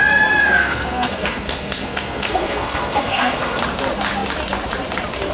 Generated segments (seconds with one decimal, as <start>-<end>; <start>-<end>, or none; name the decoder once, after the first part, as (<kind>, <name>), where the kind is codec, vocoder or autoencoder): 0.4-3.6 (codec, SNAC)